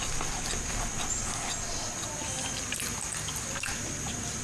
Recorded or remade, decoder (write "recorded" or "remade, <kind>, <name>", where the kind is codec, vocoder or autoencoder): recorded